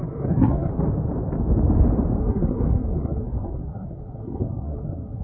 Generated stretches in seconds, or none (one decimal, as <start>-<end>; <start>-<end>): 0.0-0.7; 2.2-5.2